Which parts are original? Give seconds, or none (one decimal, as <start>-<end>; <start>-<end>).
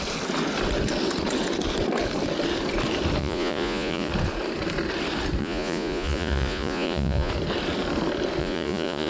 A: 0.0-3.2; 4.1-5.4; 7.3-8.4